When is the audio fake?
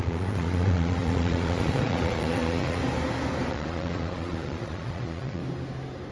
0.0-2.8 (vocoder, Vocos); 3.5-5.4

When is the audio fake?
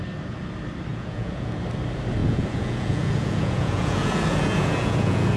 0.9-1.5 (vocoder, Vocos); 2.2-5.4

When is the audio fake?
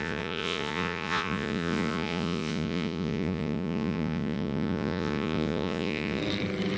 0.0-6.2 (vocoder, Vocos)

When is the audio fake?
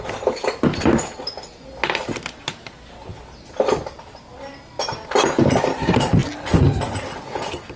none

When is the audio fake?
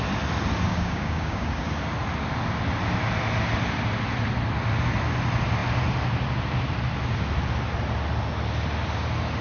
0.7-1.7 (codec, DAC)